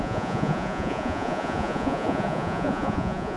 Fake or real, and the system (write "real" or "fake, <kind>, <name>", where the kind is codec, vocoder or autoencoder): fake, vocoder, Vocos